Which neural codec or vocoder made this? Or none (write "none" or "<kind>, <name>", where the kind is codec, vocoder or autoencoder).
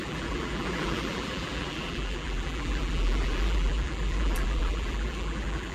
vocoder, BigVGAN v2